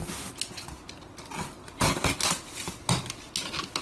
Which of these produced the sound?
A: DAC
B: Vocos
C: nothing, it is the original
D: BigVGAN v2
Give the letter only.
C